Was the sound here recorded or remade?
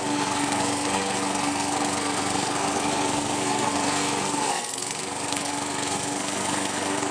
remade